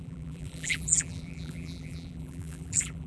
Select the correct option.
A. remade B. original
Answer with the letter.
A